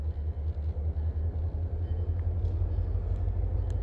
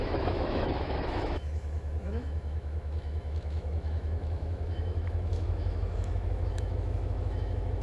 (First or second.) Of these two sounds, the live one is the first